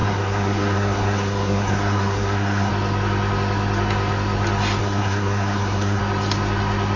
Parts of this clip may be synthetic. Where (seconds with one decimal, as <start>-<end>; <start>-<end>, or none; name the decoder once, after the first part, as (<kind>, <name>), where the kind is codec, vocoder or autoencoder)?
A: 0.0-2.7 (codec, SNAC); 4.8-6.0